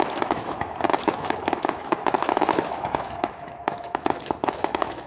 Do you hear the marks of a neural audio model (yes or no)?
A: yes